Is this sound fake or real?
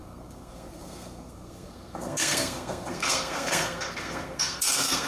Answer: fake